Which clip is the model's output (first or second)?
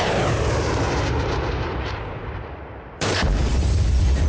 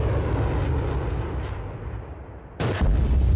first